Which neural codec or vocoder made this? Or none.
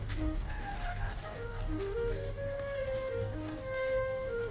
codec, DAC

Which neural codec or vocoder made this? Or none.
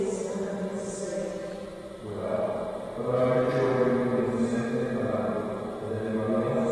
none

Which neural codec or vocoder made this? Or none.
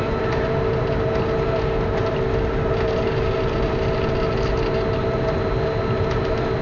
none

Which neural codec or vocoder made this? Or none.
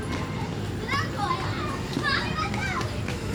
none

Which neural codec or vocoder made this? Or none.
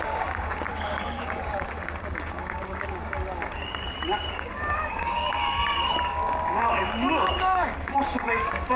codec, DAC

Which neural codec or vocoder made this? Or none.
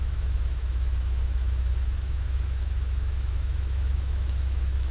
autoencoder, DAC-VAE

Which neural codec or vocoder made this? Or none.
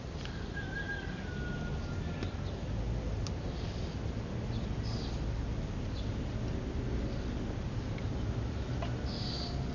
none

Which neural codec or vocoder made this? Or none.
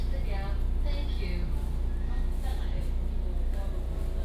none